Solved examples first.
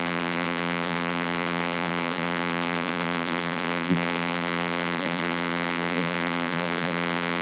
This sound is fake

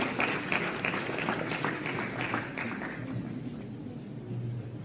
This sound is real